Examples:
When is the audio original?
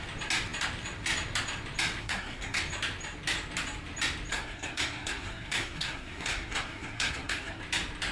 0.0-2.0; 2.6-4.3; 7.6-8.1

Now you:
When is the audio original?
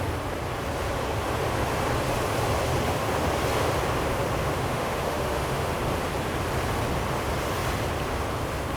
0.0-4.4; 5.7-8.8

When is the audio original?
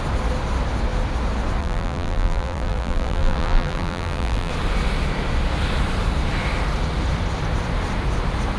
0.0-1.6; 4.5-8.6